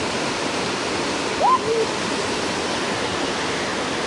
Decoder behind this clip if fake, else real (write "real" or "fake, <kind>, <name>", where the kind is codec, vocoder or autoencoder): real